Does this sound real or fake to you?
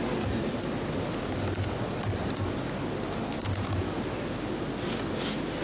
real